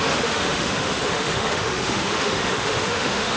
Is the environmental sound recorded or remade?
remade